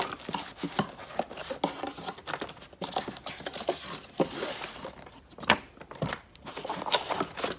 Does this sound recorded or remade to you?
recorded